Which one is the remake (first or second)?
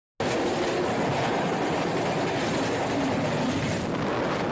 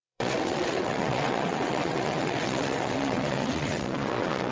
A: second